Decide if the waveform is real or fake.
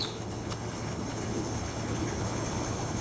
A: fake